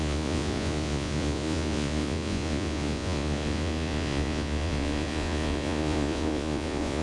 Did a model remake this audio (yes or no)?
yes